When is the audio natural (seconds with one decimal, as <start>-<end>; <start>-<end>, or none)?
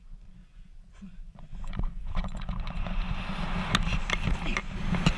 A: 0.0-0.4; 3.1-5.2